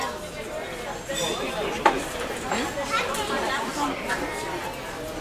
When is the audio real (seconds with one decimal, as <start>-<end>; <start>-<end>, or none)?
0.0-1.2; 4.3-5.2